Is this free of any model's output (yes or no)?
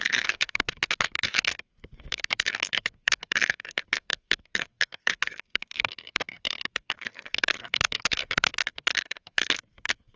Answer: no